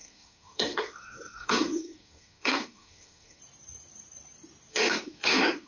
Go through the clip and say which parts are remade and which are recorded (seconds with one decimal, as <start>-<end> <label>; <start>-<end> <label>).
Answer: 0.0-3.4 remade; 3.4-4.7 recorded; 4.7-5.7 remade